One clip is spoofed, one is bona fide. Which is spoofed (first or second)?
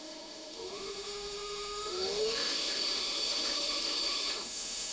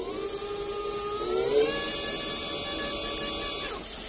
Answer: first